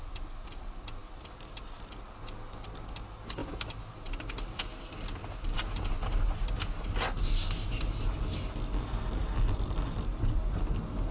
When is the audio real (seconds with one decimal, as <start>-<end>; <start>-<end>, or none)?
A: 0.0-1.0; 1.6-3.4; 4.6-9.2; 10.7-11.1